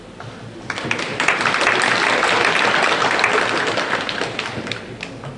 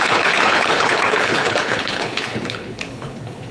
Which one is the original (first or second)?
first